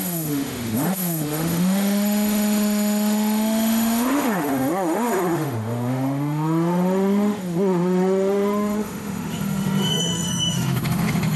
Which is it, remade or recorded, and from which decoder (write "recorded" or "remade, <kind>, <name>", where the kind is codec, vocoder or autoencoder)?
remade, autoencoder, DAC-VAE